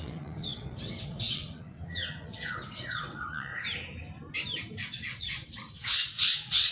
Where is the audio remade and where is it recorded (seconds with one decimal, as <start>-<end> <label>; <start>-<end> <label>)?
0.0-3.5 remade; 3.5-4.6 recorded; 4.6-6.7 remade